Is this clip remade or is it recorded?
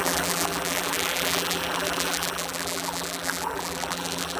remade